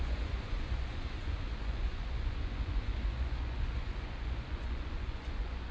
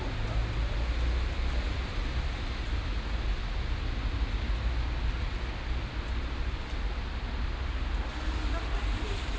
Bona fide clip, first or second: second